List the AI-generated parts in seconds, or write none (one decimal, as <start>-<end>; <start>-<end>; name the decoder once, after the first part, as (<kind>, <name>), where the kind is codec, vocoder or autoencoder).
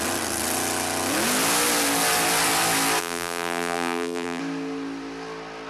3.0-4.4 (vocoder, BigVGAN v2)